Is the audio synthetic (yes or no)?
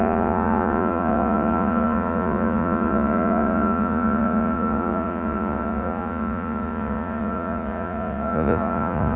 yes